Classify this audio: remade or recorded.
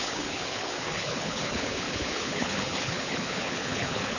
remade